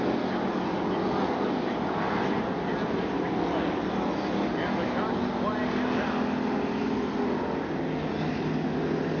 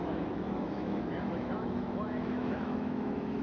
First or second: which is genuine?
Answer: first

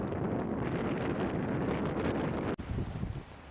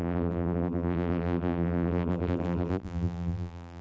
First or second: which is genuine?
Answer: first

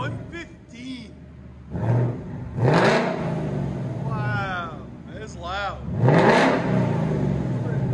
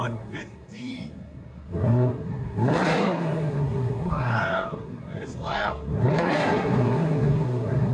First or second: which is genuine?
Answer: first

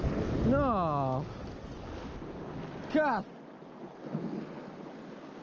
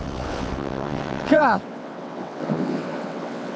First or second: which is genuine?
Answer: first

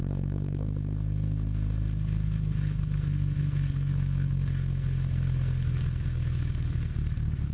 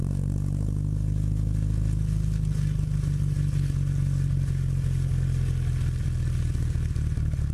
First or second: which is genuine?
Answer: second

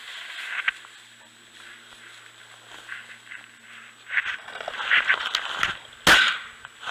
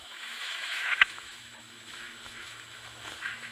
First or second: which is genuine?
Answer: first